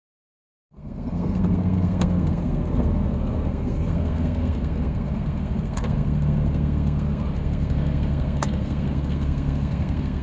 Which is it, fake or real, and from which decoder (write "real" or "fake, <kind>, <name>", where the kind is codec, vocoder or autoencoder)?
fake, codec, SNAC